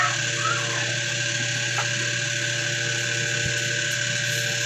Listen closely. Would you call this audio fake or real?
real